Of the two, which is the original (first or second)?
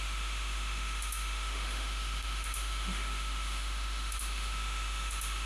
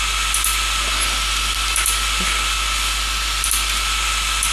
second